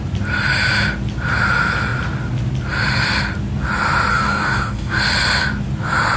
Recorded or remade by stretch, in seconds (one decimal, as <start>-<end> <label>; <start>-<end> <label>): 0.0-4.1 recorded; 4.1-5.0 remade; 5.0-6.2 recorded